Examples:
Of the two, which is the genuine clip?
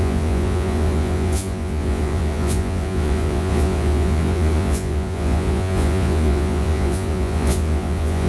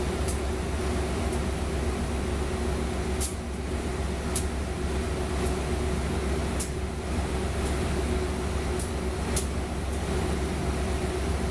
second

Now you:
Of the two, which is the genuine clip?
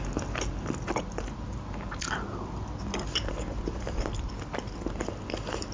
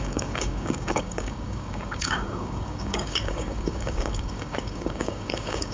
first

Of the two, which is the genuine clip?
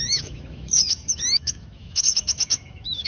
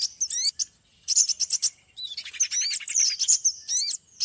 second